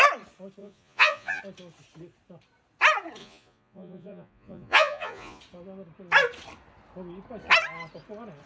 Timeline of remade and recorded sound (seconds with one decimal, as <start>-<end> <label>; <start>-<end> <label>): 0.0-0.6 recorded; 0.6-1.4 remade; 1.4-3.2 recorded; 3.2-5.4 remade; 5.4-8.5 recorded